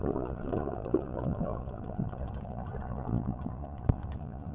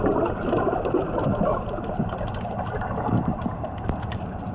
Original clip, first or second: second